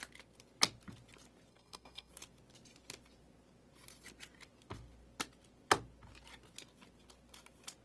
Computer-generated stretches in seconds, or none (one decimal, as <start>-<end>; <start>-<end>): 1.5-2.1